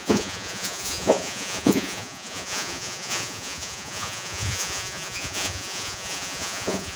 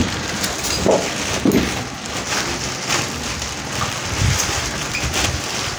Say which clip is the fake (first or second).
first